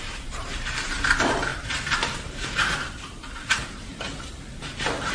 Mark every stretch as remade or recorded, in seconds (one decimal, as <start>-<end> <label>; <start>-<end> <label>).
0.0-4.1 remade; 4.1-5.1 recorded